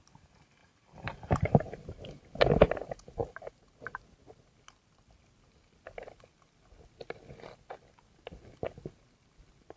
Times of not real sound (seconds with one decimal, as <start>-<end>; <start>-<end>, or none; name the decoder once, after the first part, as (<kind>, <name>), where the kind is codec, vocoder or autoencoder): 0.6-2.2 (vocoder, BigVGAN v2)